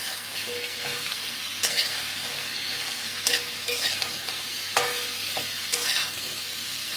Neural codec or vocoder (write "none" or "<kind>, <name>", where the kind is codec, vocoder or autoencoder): codec, SNAC